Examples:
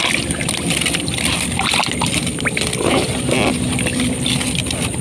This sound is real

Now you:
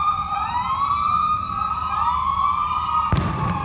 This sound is fake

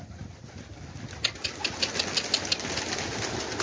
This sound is real